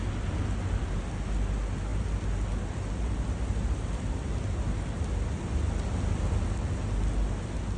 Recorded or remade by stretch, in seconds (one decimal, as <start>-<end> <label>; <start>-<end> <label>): 0.0-7.8 recorded

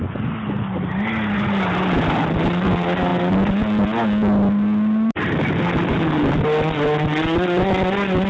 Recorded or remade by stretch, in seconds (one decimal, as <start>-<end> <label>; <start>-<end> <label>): 0.0-8.3 recorded

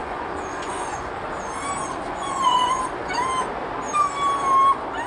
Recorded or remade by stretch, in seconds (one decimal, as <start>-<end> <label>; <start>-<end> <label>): 0.0-1.1 remade; 1.1-1.8 recorded; 1.8-2.8 remade; 2.8-5.1 recorded

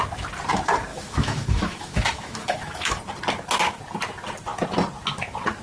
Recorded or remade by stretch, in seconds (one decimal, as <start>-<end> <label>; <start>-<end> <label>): 0.0-0.9 recorded; 0.9-3.0 remade; 3.0-5.6 recorded

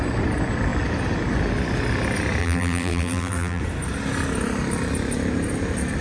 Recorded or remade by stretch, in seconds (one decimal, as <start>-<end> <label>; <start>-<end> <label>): 0.0-2.4 recorded; 2.4-3.6 remade; 3.6-6.0 recorded

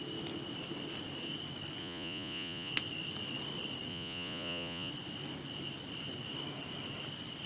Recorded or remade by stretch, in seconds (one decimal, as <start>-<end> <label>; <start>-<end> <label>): 0.0-1.8 recorded; 1.8-2.7 remade; 2.7-3.9 recorded; 3.9-4.9 remade; 4.9-7.5 recorded

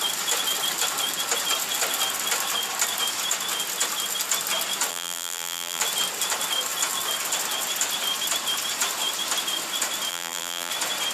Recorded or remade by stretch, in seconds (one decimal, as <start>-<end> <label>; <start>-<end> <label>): 0.0-4.9 recorded; 4.9-5.8 remade; 5.8-10.1 recorded; 10.1-10.7 remade; 10.7-11.1 recorded